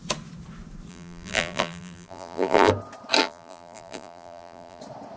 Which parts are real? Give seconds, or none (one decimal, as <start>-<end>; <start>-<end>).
0.0-0.9; 2.7-3.2; 4.8-5.2